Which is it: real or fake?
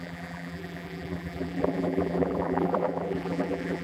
fake